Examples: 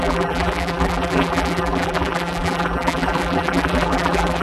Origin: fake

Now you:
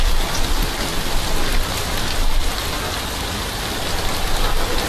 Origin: real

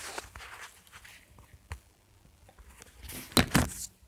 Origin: real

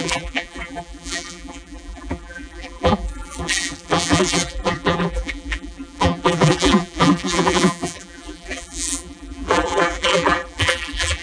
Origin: fake